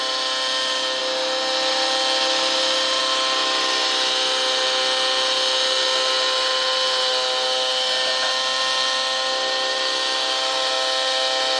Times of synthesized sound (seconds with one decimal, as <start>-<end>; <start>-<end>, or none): none